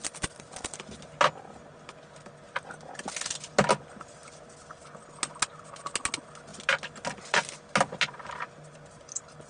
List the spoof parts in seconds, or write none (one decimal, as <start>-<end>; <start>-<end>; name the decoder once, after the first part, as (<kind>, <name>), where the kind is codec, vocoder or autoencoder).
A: none